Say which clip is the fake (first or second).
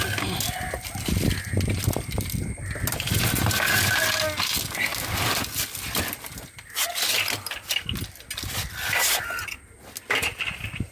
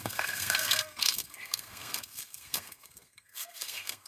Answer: second